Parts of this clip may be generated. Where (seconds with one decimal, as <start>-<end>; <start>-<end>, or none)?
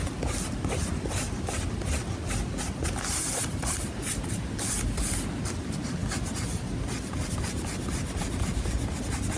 none